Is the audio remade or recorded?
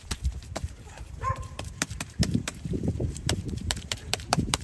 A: remade